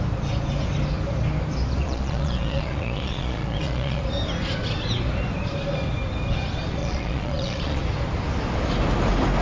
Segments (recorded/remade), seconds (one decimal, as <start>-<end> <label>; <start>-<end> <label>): 0.0-1.8 recorded; 1.8-4.0 remade; 4.0-6.8 recorded; 6.8-7.8 remade; 7.8-9.4 recorded